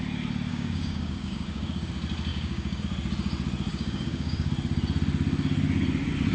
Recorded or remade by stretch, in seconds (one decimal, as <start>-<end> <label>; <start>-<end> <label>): 0.0-0.5 recorded; 0.5-1.9 remade; 1.9-2.3 recorded; 2.3-2.8 remade; 2.8-3.7 recorded; 3.7-4.5 remade; 4.5-6.3 recorded